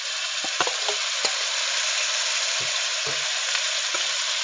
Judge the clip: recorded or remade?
recorded